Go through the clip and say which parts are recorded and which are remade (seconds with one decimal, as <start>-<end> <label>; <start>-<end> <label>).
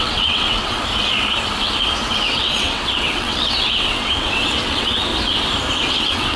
0.0-0.8 remade; 0.8-2.3 recorded; 2.3-5.1 remade; 5.1-5.9 recorded; 5.9-6.4 remade